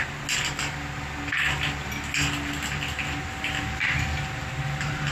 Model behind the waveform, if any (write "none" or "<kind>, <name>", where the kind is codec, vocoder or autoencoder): none